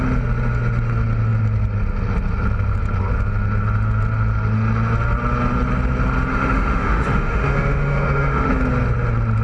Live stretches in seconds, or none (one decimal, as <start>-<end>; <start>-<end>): 0.0-6.3; 8.5-9.4